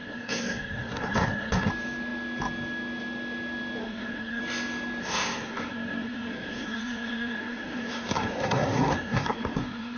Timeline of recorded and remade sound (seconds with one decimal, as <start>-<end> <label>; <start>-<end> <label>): 0.0-1.7 remade; 1.7-3.8 recorded; 3.8-4.4 remade; 4.4-5.0 recorded; 5.0-10.0 remade